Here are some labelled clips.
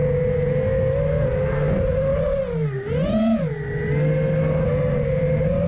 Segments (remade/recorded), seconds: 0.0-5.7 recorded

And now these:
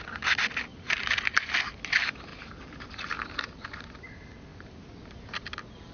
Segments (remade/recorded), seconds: 0.0-0.7 recorded; 0.7-1.5 remade; 1.5-2.3 recorded; 2.3-3.9 remade; 3.9-4.5 recorded; 4.5-5.5 remade; 5.5-5.9 recorded

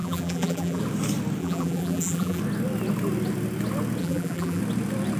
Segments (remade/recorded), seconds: 0.0-0.8 remade; 0.8-1.4 recorded; 1.4-2.4 remade; 2.4-4.0 recorded; 4.0-4.6 remade; 4.6-5.2 recorded

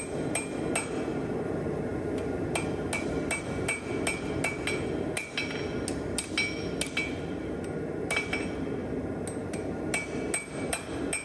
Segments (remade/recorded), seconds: 0.0-11.2 recorded

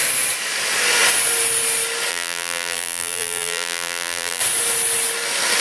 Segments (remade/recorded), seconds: 0.0-2.1 recorded; 2.1-4.4 remade; 4.4-5.6 recorded

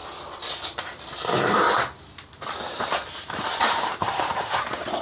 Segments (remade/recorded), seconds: 0.0-2.7 recorded; 2.7-5.0 remade

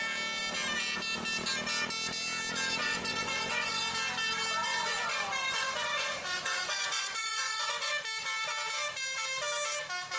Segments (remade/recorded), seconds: 0.0-2.8 recorded; 2.8-3.8 remade; 3.8-4.6 recorded; 4.6-7.9 remade; 7.9-10.2 recorded

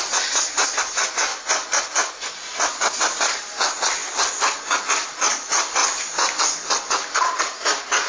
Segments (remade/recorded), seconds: 0.0-1.3 recorded; 1.3-2.3 remade; 2.3-4.0 recorded; 4.0-4.9 remade; 4.9-8.1 recorded